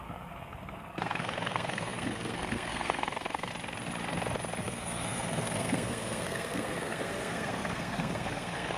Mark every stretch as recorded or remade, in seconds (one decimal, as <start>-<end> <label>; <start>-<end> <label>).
0.0-3.5 remade; 3.5-4.6 recorded; 4.6-8.8 remade